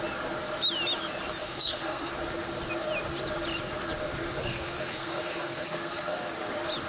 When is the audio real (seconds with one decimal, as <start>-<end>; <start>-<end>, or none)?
0.0-1.4; 2.1-4.4; 6.2-6.9